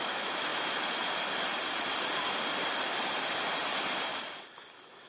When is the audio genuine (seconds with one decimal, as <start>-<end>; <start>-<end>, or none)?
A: 0.0-0.5; 3.6-5.1